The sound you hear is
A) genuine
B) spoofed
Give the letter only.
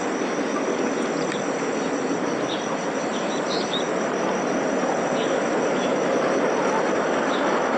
A